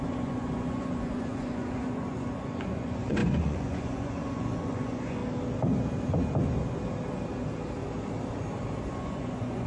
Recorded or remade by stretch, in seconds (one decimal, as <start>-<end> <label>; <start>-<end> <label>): 0.0-5.2 remade; 5.2-8.9 recorded; 8.9-9.7 remade